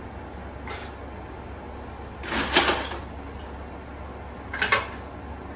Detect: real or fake real